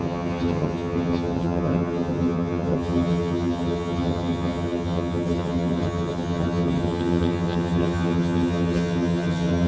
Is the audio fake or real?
fake